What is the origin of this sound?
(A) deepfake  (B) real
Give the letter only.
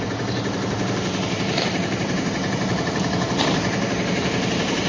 A